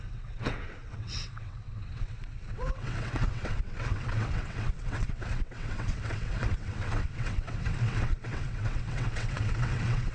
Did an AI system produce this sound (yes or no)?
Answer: yes